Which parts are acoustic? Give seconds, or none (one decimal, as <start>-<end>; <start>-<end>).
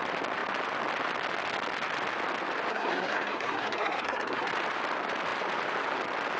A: 0.0-2.7; 4.5-6.4